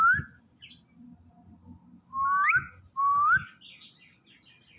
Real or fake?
real